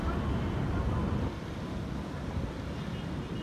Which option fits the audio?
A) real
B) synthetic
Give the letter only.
A